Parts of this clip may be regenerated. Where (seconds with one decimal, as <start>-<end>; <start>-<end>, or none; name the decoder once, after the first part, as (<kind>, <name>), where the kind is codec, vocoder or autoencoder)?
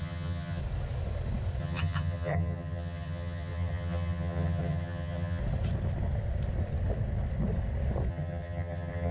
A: 0.0-0.6 (vocoder, HiFi-GAN); 1.6-5.4; 8.1-9.1